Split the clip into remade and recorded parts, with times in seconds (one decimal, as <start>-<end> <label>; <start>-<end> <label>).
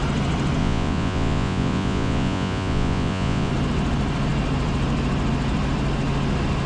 0.0-0.6 recorded; 0.6-3.5 remade; 3.5-6.7 recorded